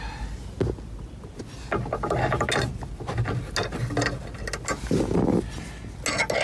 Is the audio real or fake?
real